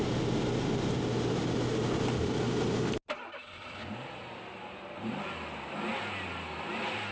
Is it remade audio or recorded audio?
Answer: recorded